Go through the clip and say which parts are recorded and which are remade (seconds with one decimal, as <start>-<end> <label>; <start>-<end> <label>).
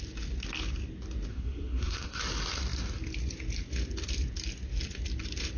0.0-1.3 recorded; 1.3-2.2 remade; 2.2-5.6 recorded